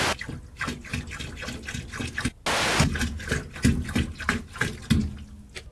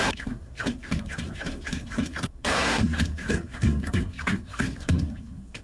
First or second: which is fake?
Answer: second